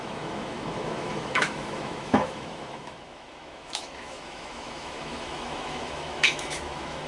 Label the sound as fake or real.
fake